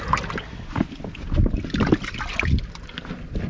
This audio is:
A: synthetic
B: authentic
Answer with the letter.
B